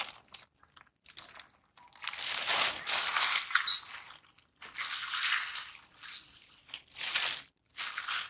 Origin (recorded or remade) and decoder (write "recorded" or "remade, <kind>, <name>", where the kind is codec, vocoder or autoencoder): recorded